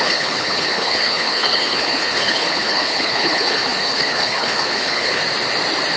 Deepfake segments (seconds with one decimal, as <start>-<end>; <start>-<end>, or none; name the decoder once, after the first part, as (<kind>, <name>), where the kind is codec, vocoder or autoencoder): 0.0-5.2 (codec, HILCodec)